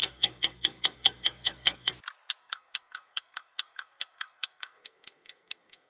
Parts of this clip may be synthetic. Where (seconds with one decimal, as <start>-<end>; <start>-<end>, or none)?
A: 0.0-1.9; 2.4-5.9